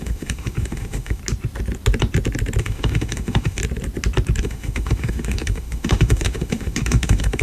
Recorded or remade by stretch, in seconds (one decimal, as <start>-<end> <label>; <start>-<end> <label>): 0.0-1.2 remade; 1.2-2.6 recorded; 2.6-3.6 remade; 3.6-4.4 recorded; 4.4-7.4 remade